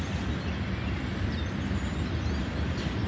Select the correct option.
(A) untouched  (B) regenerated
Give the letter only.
A